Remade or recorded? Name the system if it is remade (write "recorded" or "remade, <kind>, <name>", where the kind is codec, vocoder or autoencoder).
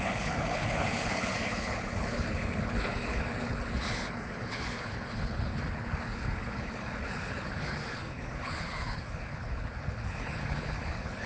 remade, codec, HILCodec